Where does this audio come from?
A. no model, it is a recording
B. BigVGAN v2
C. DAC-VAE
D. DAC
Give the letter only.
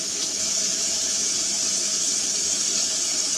C